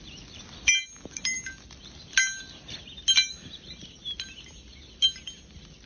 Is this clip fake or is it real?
real